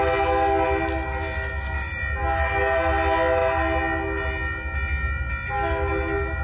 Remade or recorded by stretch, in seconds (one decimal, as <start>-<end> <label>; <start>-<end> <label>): 0.0-6.4 recorded

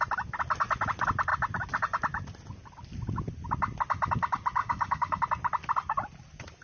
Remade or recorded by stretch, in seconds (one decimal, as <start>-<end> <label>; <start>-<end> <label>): 0.0-4.6 recorded; 4.6-5.2 remade; 5.2-6.6 recorded

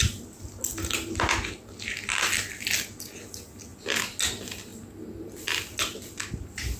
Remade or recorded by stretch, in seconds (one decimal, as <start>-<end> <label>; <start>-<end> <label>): 0.0-6.8 recorded

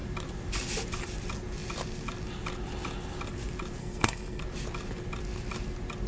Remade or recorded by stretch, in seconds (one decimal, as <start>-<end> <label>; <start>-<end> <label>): 0.0-3.8 recorded; 3.8-4.4 remade; 4.4-6.1 recorded

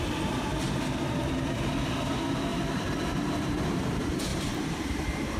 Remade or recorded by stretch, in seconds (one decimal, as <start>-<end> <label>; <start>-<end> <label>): 0.0-2.5 recorded; 2.5-3.8 remade; 3.8-4.3 recorded; 4.3-4.8 remade; 4.8-5.4 recorded